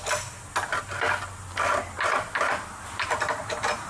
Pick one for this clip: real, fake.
real